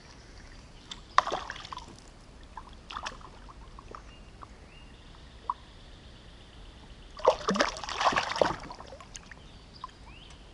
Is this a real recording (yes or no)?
yes